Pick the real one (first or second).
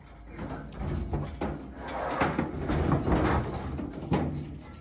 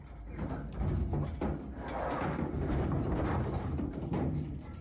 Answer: first